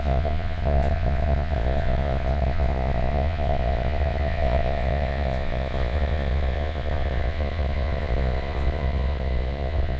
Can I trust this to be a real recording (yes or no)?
no